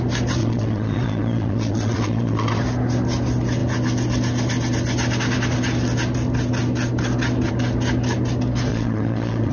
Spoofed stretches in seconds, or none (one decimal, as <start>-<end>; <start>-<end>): 0.4-2.6; 8.7-9.5